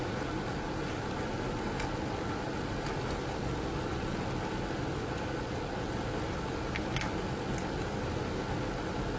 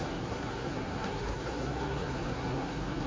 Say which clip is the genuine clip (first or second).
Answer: first